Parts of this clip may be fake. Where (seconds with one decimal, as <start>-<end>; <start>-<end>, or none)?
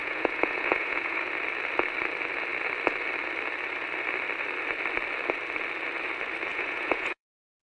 0.0-1.3; 6.5-7.6